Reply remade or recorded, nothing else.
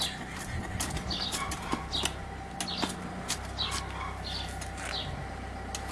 recorded